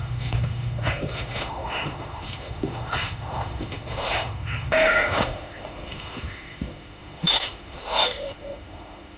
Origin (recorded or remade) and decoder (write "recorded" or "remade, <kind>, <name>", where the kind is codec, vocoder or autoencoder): remade, autoencoder, DAC-VAE